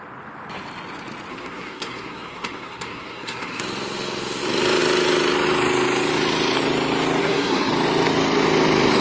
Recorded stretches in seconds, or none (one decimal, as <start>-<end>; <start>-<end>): 0.0-1.3; 3.6-7.2; 7.7-9.0